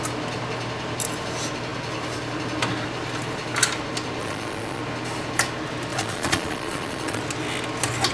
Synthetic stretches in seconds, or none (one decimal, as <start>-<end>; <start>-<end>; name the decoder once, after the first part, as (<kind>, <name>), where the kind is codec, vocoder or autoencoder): 4.2-4.8 (vocoder, Vocos); 5.9-7.2